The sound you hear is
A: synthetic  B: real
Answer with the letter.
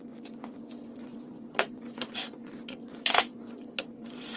A